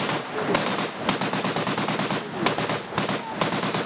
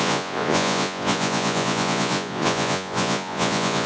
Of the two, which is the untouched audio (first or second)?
first